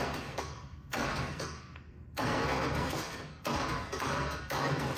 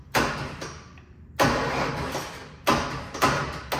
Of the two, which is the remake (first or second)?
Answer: first